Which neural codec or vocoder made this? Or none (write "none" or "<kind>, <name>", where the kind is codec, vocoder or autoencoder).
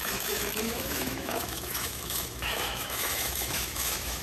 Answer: autoencoder, DAC-VAE